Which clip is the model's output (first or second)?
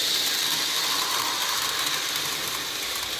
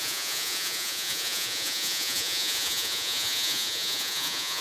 second